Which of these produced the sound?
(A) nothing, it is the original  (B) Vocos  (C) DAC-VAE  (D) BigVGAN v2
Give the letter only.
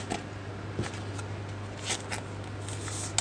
A